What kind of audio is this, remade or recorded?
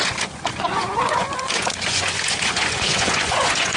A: remade